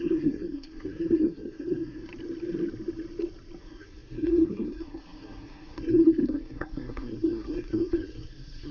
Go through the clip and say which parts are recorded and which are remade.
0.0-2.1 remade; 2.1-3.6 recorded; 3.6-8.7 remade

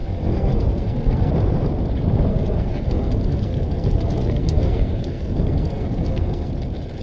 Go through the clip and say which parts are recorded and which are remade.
0.0-1.3 remade; 1.3-2.3 recorded; 2.3-6.5 remade; 6.5-7.0 recorded

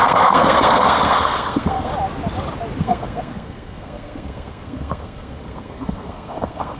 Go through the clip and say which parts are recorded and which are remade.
0.0-1.9 remade; 1.9-2.8 recorded; 2.8-6.8 remade

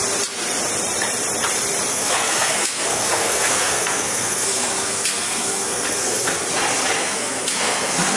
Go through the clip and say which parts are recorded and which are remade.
0.0-1.9 recorded; 1.9-6.4 remade; 6.4-7.0 recorded; 7.0-8.2 remade